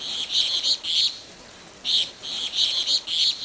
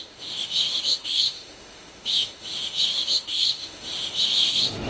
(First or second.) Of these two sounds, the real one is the first